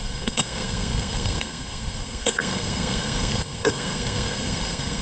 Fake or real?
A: fake